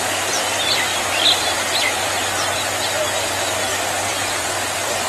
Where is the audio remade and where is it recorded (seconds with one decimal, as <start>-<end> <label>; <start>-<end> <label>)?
0.0-3.7 recorded; 3.7-5.1 remade